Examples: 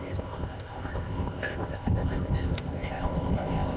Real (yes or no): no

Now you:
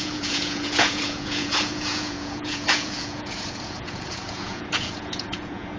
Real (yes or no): no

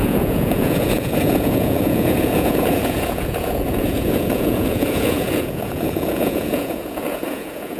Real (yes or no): no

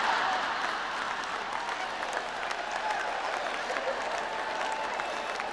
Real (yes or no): yes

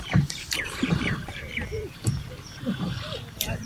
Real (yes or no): no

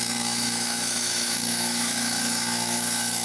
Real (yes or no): no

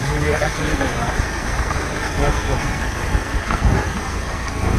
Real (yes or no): no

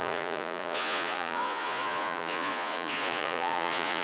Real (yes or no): no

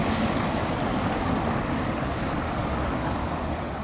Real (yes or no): no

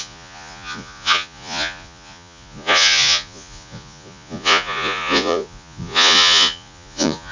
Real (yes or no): no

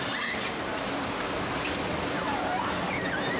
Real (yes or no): yes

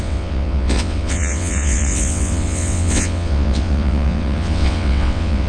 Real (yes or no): no